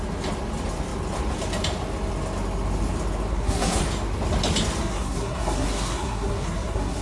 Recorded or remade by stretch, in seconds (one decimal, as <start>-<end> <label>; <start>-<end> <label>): 0.0-3.3 recorded; 3.3-3.8 remade; 3.8-4.8 recorded; 4.8-7.0 remade